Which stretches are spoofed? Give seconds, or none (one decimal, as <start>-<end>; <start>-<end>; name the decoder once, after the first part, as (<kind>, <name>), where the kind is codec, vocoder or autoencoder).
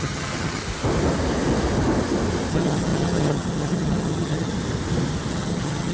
0.0-0.6 (vocoder, HiFi-GAN); 2.5-4.5; 5.3-5.9